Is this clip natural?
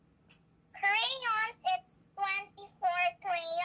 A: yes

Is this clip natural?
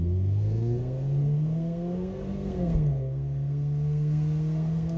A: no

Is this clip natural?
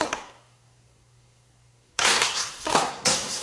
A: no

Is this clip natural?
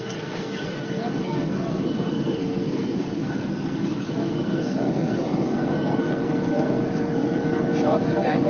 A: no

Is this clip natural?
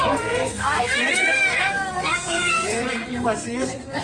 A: no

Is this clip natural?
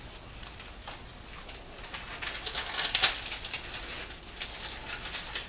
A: yes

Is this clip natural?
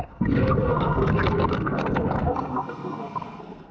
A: no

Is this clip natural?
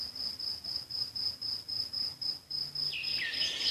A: yes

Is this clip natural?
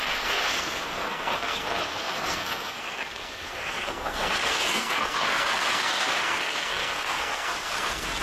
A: no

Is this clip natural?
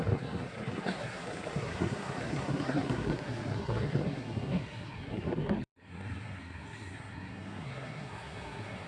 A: no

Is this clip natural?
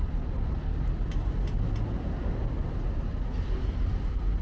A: yes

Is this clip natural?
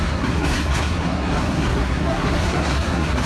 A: no